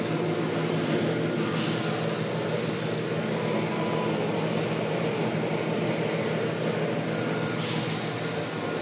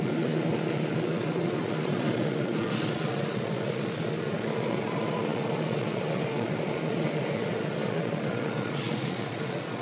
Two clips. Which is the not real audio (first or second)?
second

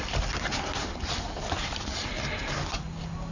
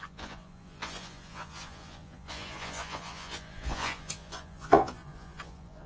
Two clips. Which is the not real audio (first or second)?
second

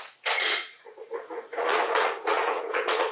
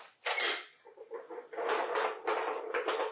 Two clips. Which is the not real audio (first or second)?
first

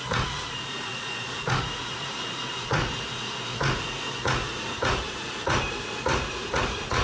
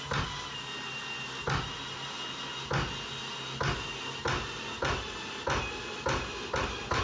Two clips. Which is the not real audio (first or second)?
first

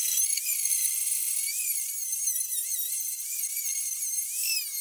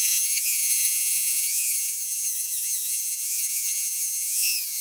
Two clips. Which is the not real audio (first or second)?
second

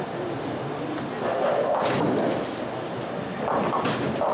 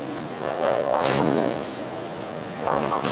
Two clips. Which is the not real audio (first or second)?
second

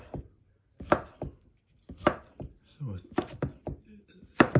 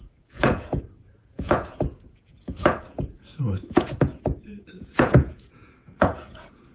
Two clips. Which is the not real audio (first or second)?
second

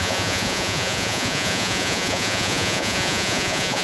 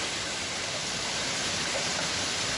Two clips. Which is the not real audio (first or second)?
first